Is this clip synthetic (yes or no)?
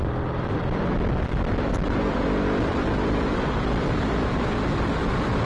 yes